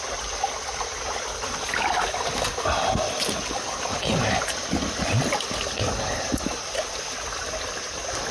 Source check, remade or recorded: recorded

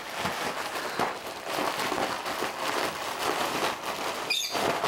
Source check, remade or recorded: recorded